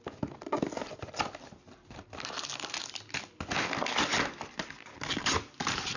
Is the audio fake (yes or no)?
no